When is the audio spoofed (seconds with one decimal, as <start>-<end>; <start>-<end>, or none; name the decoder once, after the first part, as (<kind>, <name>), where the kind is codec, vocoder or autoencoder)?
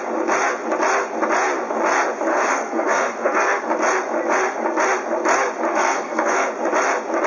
2.3-3.6 (codec, SNAC); 5.7-6.5